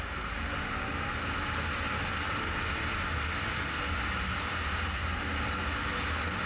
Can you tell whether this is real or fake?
real